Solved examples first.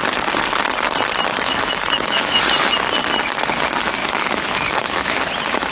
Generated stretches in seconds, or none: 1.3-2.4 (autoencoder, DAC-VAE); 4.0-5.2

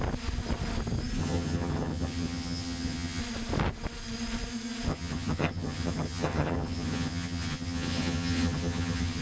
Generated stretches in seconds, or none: 1.2-3.2 (vocoder, HiFi-GAN); 4.9-9.2

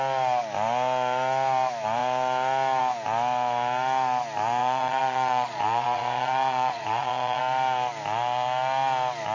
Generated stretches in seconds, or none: 4.6-7.4 (vocoder, Vocos)

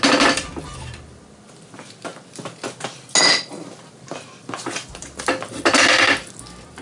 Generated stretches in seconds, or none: none

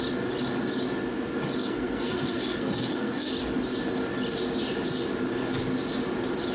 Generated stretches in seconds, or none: 1.6-3.3 (codec, SNAC)

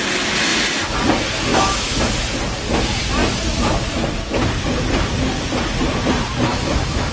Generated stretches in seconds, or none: 1.5-2.1 (autoencoder, DAC-VAE); 6.5-7.1

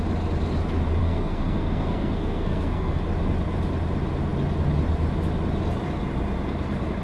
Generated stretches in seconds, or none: 1.0-3.0 (codec, SNAC)

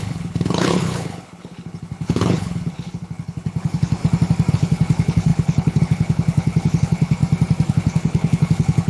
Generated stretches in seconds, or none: 0.0-4.0 (codec, HILCodec); 4.5-7.2; 7.7-8.9